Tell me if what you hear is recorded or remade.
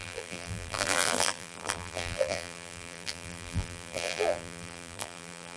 remade